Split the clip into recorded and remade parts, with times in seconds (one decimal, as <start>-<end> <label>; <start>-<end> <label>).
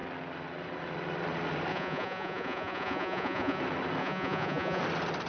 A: 0.0-1.7 recorded; 1.7-3.6 remade; 3.6-4.0 recorded; 4.0-4.8 remade; 4.8-5.3 recorded